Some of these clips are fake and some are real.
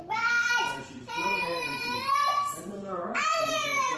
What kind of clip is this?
fake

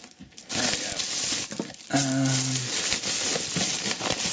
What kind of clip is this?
real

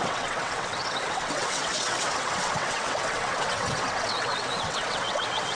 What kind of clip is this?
fake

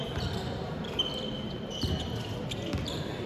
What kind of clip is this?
real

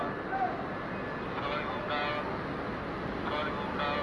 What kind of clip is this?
real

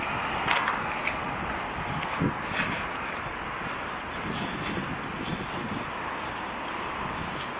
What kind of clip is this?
real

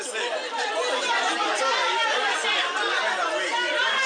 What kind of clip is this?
real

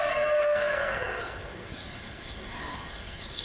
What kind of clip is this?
fake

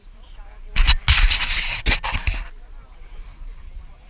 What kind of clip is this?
real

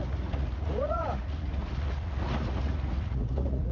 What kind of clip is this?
fake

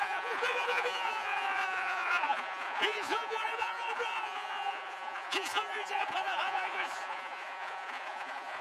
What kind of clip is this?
fake